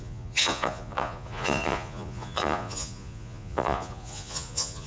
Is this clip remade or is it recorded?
remade